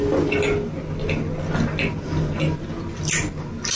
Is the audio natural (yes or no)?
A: yes